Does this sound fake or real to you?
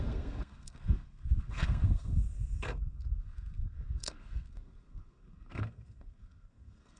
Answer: fake